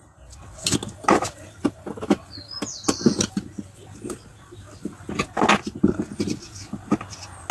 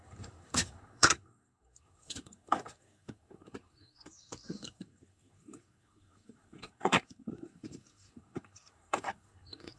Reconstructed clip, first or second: second